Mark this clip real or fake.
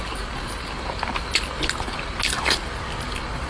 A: real